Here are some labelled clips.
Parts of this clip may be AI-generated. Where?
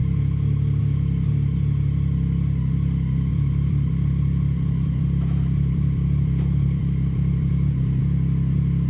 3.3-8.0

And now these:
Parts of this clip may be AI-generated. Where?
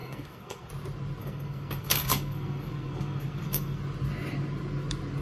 0.0-0.7; 1.2-3.8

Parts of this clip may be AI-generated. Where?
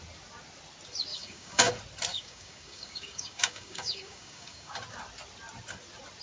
1.1-1.7; 2.1-4.7